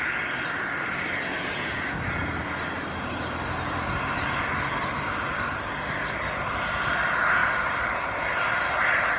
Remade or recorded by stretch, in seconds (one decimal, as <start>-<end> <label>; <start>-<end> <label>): 0.0-9.2 recorded